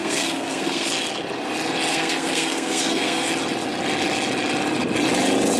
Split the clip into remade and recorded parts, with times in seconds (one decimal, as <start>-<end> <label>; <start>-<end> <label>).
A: 0.0-0.9 remade; 0.9-1.9 recorded; 1.9-3.3 remade; 3.3-5.6 recorded